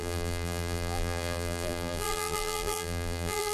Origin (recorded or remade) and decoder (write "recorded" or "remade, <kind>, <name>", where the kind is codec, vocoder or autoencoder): remade, vocoder, BigVGAN v2